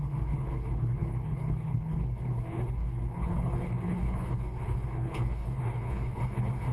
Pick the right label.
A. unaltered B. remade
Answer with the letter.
B